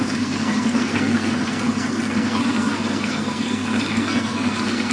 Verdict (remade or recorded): remade